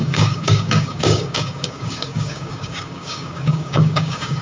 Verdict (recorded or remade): remade